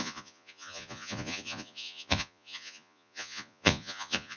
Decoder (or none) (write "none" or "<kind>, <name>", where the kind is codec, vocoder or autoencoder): vocoder, Vocos